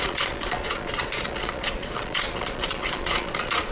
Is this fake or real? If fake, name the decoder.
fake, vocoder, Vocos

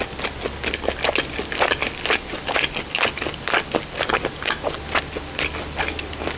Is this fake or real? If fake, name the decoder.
real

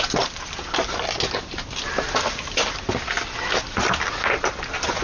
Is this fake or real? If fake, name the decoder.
real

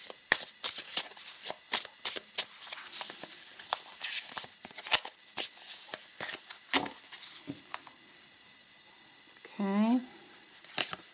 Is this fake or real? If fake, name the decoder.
real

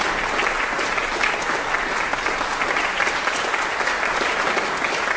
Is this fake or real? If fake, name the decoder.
real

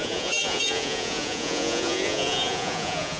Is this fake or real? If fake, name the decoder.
fake, vocoder, Vocos